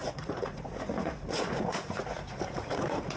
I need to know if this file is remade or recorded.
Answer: remade